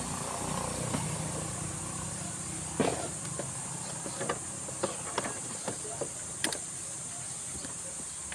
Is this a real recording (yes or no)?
yes